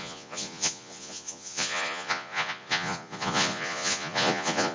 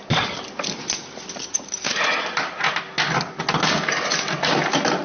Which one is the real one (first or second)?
second